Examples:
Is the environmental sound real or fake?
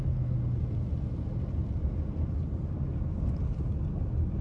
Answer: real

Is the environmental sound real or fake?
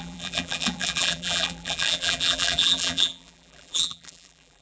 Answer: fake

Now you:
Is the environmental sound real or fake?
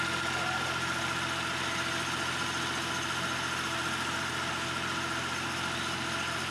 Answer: real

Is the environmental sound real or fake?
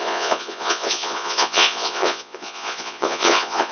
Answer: fake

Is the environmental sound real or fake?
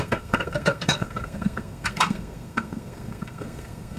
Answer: fake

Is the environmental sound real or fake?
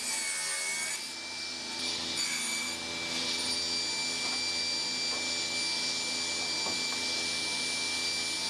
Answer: real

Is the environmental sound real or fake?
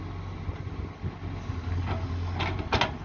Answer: real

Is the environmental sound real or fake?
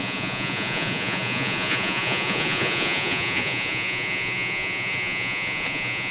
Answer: fake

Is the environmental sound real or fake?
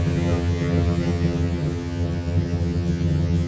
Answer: fake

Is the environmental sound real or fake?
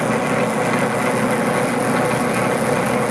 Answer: real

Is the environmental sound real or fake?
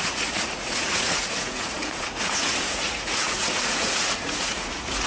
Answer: fake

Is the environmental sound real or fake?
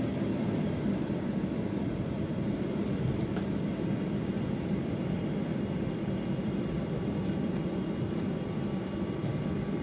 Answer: fake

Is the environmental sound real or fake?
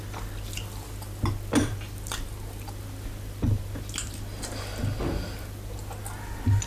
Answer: real